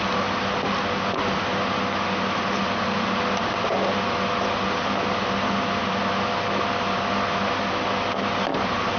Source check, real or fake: real